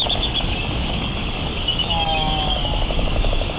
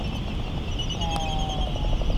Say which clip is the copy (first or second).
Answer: first